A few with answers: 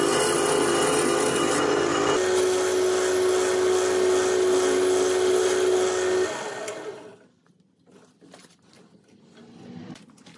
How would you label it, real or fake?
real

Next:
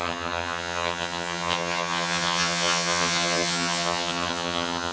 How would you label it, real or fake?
fake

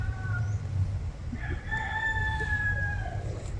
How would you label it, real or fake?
fake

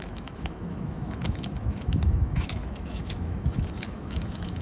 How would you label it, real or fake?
fake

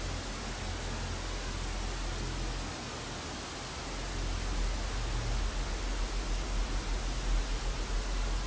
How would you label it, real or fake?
real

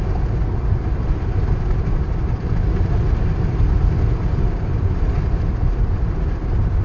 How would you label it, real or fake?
real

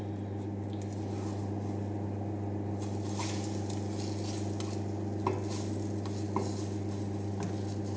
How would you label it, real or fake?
real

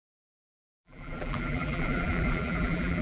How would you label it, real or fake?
fake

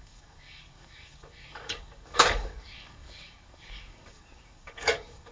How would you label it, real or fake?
fake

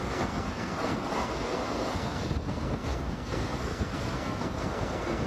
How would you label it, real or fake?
fake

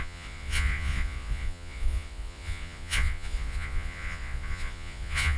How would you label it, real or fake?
fake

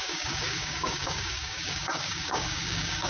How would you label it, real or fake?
fake